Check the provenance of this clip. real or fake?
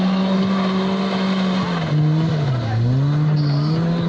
real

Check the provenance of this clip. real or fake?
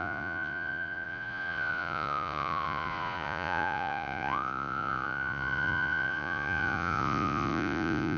fake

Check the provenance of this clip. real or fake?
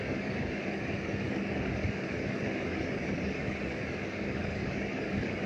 fake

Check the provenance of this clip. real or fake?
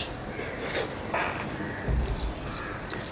real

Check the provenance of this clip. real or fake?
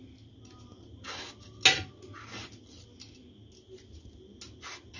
real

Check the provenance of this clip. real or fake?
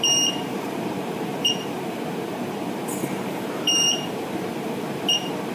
fake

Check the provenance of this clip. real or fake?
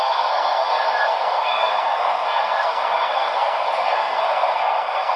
fake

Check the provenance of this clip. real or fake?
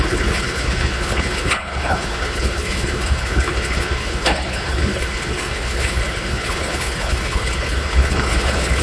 fake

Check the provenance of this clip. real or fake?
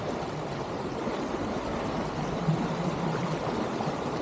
real